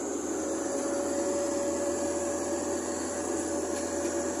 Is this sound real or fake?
real